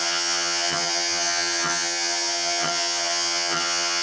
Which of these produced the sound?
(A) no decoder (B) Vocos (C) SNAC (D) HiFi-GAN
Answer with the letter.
D